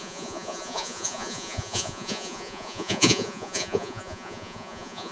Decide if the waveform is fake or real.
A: fake